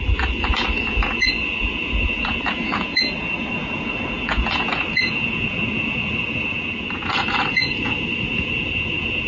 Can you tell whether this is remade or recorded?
remade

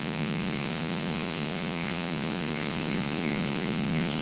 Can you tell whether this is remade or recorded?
remade